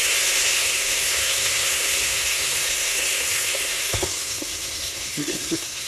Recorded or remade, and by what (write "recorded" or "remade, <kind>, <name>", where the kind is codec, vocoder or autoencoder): remade, codec, SNAC